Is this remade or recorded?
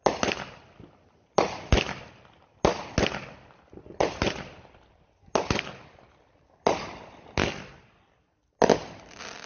recorded